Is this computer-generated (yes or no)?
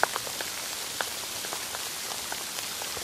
no